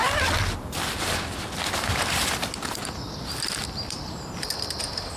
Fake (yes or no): no